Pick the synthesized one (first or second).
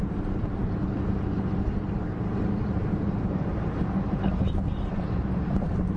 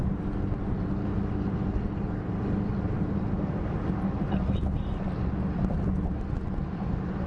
first